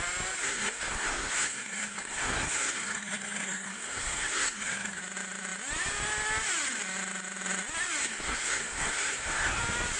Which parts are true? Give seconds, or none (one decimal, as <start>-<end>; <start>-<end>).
0.0-0.4; 5.0-8.0; 9.6-10.0